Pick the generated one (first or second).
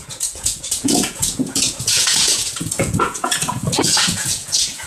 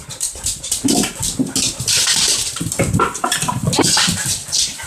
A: first